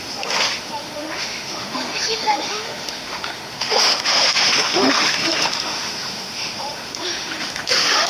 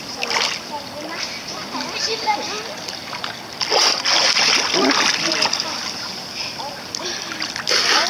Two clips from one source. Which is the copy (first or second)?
first